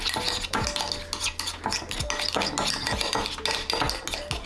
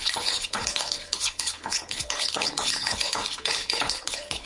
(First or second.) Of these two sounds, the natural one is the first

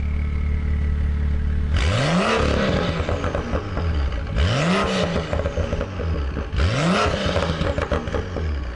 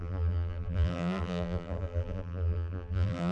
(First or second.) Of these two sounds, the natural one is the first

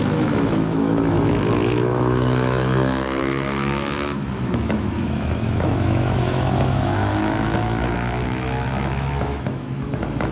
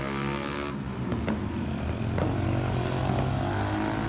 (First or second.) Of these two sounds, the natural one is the second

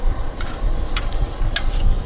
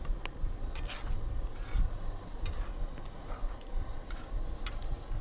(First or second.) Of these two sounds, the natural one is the second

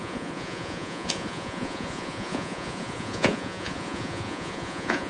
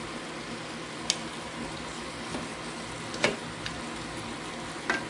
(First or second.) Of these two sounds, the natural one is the second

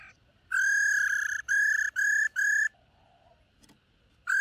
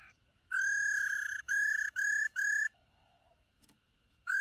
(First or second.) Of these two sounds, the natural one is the first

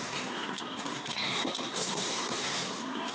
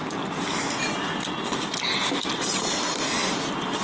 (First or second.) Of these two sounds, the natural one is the second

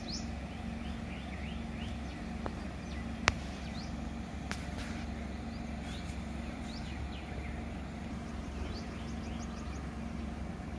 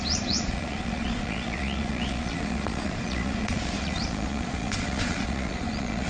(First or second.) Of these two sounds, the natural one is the first